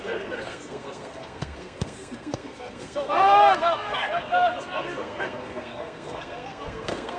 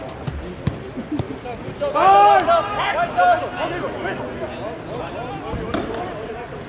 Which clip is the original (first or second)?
second